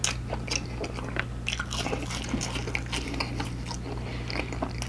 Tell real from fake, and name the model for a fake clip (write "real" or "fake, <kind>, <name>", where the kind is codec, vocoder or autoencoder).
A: real